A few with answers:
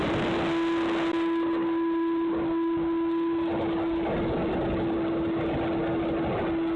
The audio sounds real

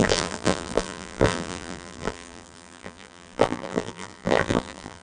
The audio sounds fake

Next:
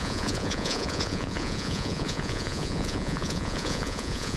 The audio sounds fake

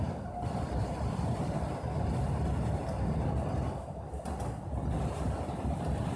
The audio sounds real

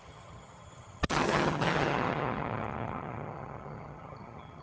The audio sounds fake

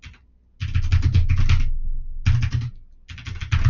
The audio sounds real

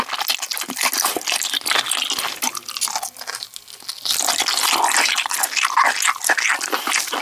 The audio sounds real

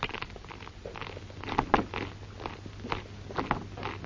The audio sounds real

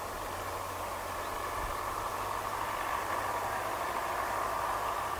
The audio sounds real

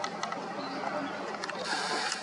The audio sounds real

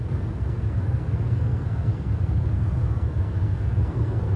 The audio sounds fake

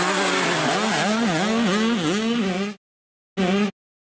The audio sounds real